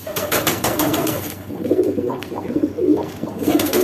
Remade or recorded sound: remade